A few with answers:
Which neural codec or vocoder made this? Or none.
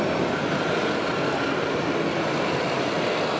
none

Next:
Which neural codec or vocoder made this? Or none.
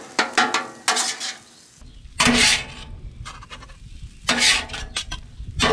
none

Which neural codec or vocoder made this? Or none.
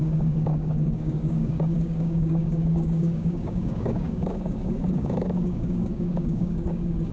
codec, DAC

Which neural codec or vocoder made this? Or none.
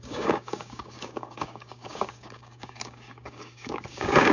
codec, DAC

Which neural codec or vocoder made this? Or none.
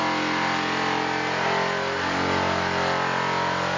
none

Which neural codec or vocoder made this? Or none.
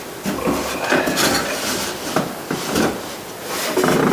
none